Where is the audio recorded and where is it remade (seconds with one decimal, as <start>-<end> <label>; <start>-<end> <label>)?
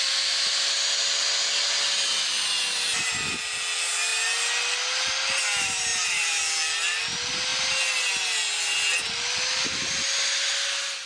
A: 0.0-11.1 recorded